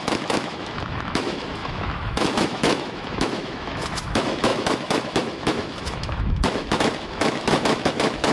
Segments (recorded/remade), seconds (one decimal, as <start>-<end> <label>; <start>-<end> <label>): 0.0-8.3 remade